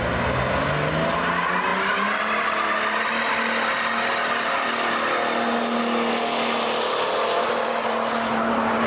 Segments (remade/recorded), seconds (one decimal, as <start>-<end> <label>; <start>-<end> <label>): 0.0-8.9 recorded